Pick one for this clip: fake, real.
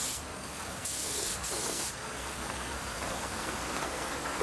fake